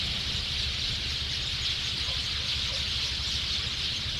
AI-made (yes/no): no